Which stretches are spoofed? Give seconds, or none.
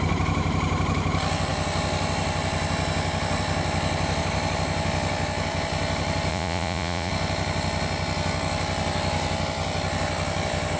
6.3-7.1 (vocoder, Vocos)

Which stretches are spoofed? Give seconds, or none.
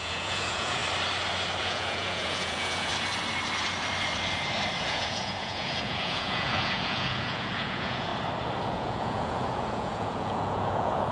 0.0-0.8 (vocoder, Vocos); 1.6-2.9; 4.8-8.1; 8.6-11.1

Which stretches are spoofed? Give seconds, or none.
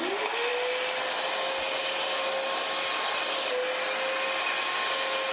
none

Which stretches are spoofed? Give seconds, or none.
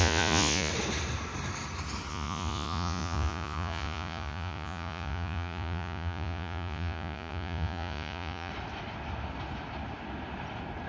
0.0-0.7 (vocoder, Vocos); 2.1-8.5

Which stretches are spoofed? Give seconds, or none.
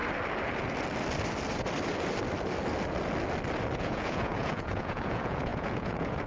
3.8-6.3 (vocoder, Vocos)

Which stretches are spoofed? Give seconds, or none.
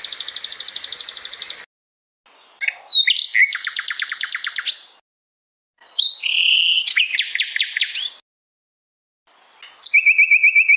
none